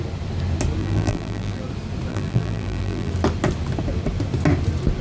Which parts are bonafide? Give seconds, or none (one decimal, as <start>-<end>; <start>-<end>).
0.0-0.8; 1.6-2.1; 3.1-5.0